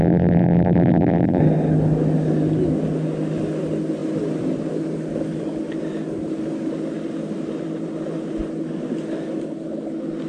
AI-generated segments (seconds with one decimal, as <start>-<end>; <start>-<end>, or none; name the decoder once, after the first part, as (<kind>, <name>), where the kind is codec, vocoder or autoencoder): 0.0-1.4 (vocoder, BigVGAN v2)